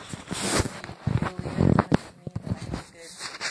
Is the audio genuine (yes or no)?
yes